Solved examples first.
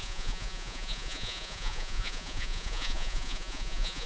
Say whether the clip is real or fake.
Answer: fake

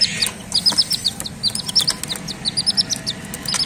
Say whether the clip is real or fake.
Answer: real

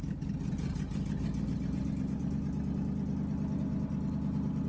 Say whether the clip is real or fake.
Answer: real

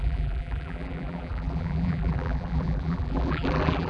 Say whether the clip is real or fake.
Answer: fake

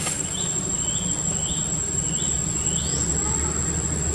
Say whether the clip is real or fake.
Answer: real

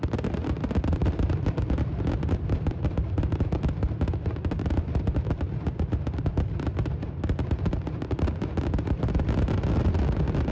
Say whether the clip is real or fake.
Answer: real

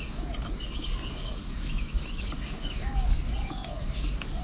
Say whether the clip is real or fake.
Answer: fake